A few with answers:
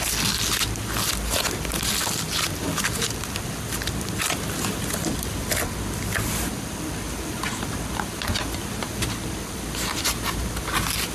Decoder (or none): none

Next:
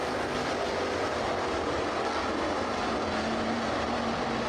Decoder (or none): none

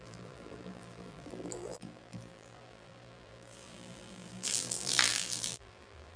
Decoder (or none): vocoder, BigVGAN v2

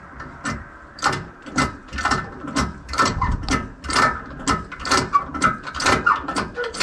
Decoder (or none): none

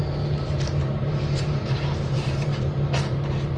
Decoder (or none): vocoder, BigVGAN v2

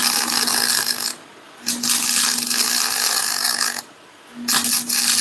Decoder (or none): none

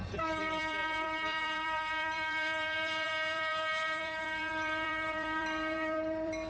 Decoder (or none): vocoder, BigVGAN v2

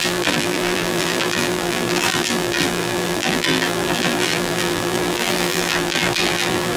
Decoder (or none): vocoder, BigVGAN v2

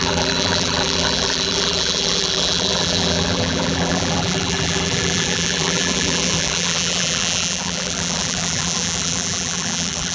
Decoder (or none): vocoder, BigVGAN v2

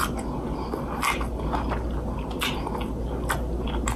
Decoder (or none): none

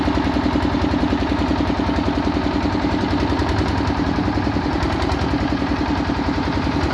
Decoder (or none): vocoder, BigVGAN v2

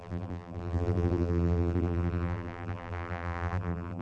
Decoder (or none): vocoder, BigVGAN v2